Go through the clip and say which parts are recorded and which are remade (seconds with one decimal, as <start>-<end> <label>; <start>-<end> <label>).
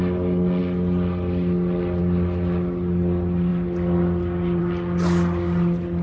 0.0-6.0 recorded